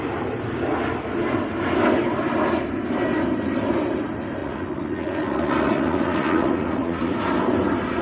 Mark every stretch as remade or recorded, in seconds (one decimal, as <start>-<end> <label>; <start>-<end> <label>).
0.0-4.4 recorded; 4.4-7.1 remade; 7.1-8.0 recorded